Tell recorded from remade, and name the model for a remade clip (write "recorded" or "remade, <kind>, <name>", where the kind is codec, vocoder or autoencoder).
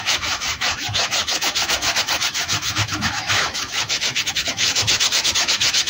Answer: remade, autoencoder, DAC-VAE